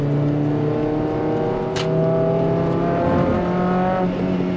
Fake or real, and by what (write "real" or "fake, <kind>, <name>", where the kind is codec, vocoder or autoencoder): real